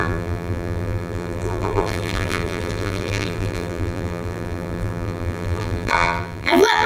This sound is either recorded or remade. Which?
remade